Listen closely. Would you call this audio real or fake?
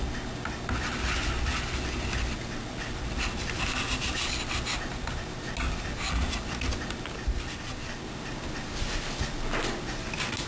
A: real